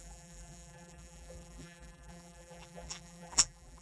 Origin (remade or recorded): remade